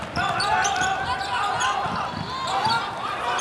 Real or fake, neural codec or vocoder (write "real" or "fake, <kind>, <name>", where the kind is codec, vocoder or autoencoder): real